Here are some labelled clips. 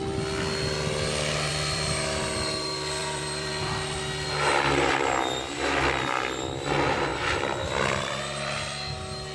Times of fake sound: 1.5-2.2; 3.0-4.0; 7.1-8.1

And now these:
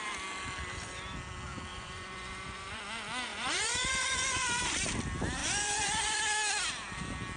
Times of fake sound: 1.7-2.8; 3.3-4.6; 5.4-6.2

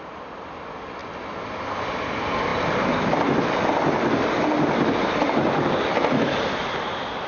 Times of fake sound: none

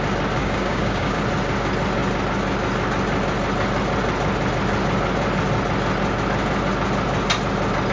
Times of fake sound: 0.4-1.2

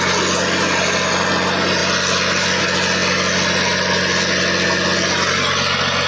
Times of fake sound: none

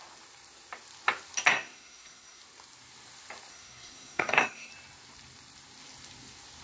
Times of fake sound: 1.5-2.4; 3.5-4.7

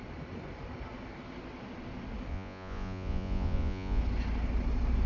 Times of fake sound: 2.3-4.0

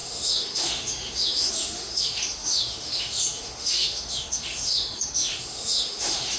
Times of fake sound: 0.0-6.4